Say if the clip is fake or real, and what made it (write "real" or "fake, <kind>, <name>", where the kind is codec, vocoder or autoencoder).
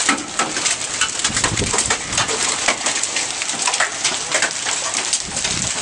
real